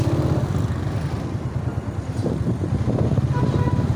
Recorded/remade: recorded